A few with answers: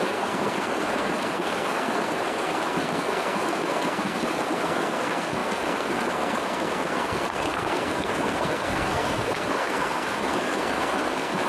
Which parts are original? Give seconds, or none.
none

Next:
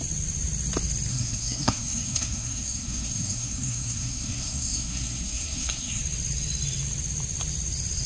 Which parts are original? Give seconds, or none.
0.0-1.1; 6.0-8.1

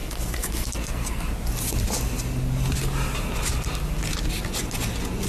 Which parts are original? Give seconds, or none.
1.3-5.3